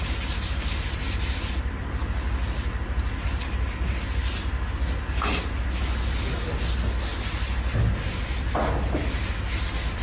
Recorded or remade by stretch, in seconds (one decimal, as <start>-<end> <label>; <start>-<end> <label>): 0.0-10.0 recorded

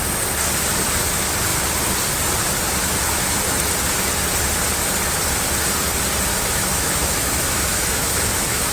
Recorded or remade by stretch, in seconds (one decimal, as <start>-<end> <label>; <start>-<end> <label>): 0.0-6.3 recorded; 6.3-8.7 remade